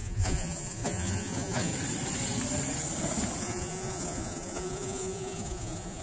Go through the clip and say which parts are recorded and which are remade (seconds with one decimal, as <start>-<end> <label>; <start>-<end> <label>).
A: 0.0-1.7 remade; 1.7-3.4 recorded; 3.4-6.0 remade